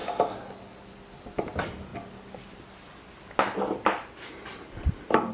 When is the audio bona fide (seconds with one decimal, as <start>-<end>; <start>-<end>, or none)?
0.0-5.3